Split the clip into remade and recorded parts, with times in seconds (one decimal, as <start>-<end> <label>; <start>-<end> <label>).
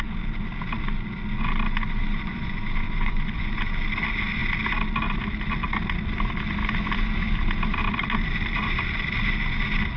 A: 0.0-2.0 recorded; 2.0-3.6 remade; 3.6-10.0 recorded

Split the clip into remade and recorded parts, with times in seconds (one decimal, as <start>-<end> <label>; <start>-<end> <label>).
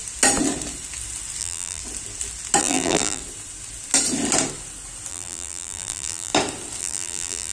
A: 0.0-1.4 recorded; 1.4-1.8 remade; 1.8-2.6 recorded; 2.6-3.2 remade; 3.2-5.1 recorded; 5.1-6.3 remade; 6.3-6.8 recorded; 6.8-7.5 remade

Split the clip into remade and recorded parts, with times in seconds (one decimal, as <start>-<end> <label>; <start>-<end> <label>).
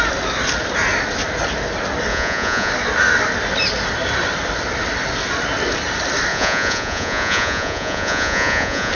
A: 0.0-2.1 recorded; 2.1-2.7 remade; 2.7-6.3 recorded; 6.3-8.9 remade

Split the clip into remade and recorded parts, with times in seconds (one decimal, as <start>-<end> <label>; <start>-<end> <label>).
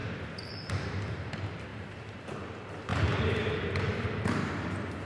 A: 0.0-0.7 remade; 0.7-1.7 recorded; 1.7-2.3 remade; 2.3-2.9 recorded; 2.9-5.1 remade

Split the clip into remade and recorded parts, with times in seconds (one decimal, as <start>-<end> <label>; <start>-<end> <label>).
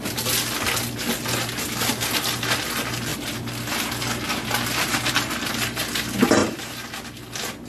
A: 0.0-6.4 recorded; 6.4-6.9 remade; 6.9-7.7 recorded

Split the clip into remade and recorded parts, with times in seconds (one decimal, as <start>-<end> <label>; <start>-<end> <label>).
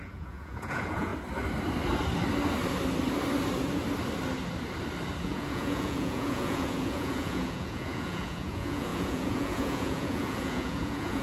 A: 0.0-1.1 remade; 1.1-5.2 recorded; 5.2-11.2 remade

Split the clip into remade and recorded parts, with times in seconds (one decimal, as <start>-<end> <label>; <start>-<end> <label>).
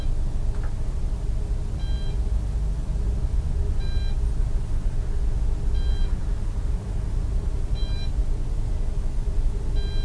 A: 0.0-10.0 recorded